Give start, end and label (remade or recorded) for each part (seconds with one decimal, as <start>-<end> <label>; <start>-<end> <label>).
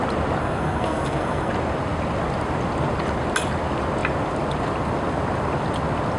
0.0-0.4 recorded; 0.4-1.5 remade; 1.5-6.2 recorded